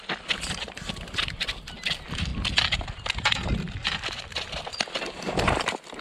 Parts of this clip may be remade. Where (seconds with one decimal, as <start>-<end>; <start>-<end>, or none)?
none